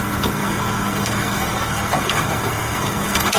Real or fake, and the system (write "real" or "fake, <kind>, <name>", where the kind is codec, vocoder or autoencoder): fake, codec, SNAC